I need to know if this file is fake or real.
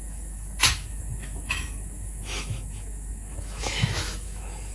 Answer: fake